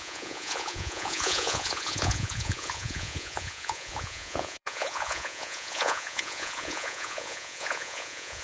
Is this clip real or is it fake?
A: fake